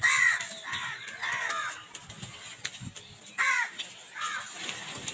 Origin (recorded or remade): recorded